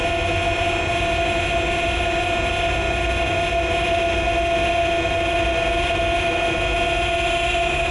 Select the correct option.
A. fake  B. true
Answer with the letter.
B